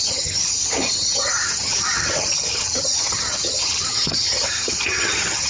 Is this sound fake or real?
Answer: fake